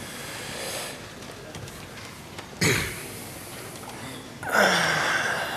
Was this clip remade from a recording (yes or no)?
no